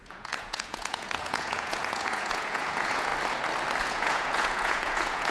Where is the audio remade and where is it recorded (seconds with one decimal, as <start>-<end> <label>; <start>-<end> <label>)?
0.0-3.1 remade; 3.1-3.8 recorded; 3.8-5.3 remade